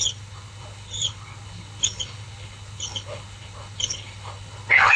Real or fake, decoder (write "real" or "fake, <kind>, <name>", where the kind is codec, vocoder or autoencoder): fake, codec, HILCodec